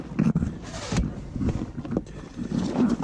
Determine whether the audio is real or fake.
real